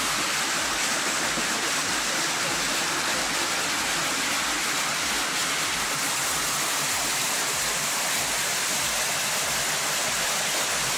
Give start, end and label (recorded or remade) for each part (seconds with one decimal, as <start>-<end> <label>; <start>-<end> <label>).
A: 0.0-11.0 recorded

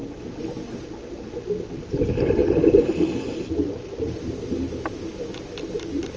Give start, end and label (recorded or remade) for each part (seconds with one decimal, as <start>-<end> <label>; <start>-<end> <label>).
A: 0.0-6.2 recorded

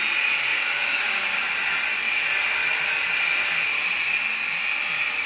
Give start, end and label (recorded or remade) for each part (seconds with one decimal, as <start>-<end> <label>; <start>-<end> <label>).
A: 0.0-0.5 recorded; 0.5-1.2 remade; 1.2-5.3 recorded

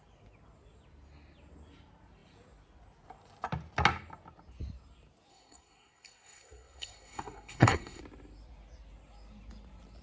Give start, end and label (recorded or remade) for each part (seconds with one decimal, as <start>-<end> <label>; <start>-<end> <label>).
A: 0.0-5.3 recorded; 5.3-8.0 remade; 8.0-10.0 recorded

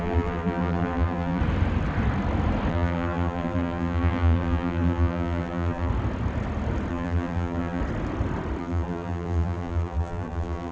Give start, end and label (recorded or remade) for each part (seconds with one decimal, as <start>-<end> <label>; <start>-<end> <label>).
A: 0.0-1.4 remade; 1.4-2.7 recorded; 2.7-5.9 remade; 5.9-6.9 recorded; 6.9-7.8 remade; 7.8-8.6 recorded; 8.6-10.7 remade

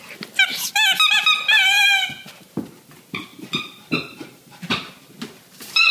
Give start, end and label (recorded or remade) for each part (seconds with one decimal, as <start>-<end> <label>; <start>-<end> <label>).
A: 0.0-3.3 recorded; 3.3-4.9 remade; 4.9-5.9 recorded

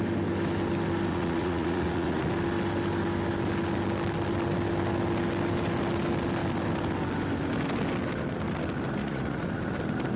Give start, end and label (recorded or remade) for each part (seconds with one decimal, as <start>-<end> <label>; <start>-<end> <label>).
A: 0.0-1.1 recorded; 1.1-2.3 remade; 2.3-9.0 recorded; 9.0-9.5 remade; 9.5-10.2 recorded